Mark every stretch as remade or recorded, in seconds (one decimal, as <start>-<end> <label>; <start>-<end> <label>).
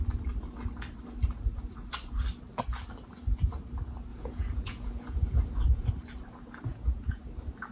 0.0-4.1 recorded; 4.1-5.9 remade; 5.9-6.7 recorded; 6.7-7.2 remade; 7.2-7.7 recorded